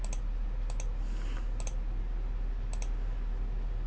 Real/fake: real